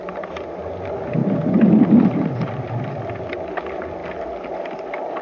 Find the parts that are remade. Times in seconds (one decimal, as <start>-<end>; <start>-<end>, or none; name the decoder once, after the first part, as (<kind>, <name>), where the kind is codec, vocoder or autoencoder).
none